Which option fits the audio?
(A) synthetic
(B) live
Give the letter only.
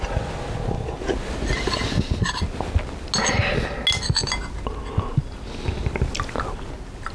B